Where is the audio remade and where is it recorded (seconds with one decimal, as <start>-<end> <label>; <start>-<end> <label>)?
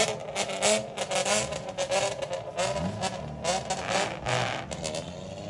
0.0-5.5 recorded